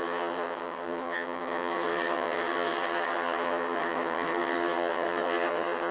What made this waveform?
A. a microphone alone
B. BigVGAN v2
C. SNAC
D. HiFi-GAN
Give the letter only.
D